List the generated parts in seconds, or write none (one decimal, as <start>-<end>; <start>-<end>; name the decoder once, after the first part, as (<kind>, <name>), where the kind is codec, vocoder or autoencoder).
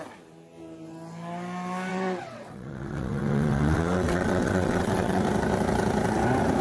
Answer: 1.9-5.2 (vocoder, WaveNeXt)